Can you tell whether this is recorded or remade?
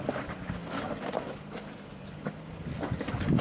recorded